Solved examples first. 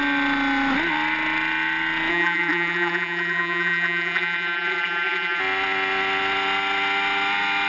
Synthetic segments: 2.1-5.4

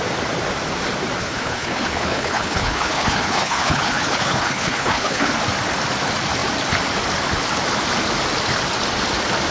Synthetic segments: 1.2-5.3